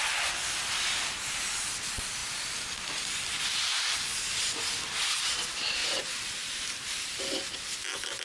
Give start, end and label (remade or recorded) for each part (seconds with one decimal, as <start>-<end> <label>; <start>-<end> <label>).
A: 0.0-2.2 recorded; 2.2-3.4 remade; 3.4-5.8 recorded; 5.8-7.5 remade; 7.5-8.2 recorded